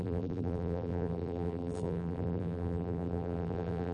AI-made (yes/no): yes